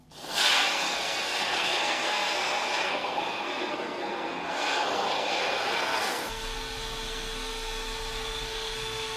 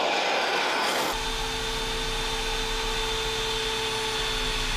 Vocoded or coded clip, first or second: first